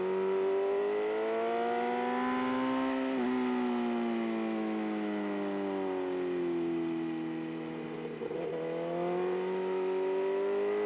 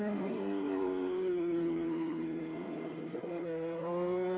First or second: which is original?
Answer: first